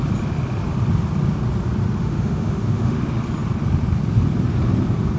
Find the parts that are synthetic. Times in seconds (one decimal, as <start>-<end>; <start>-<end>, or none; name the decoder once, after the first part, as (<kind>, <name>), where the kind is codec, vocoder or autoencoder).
2.0-3.0 (autoencoder, DAC-VAE)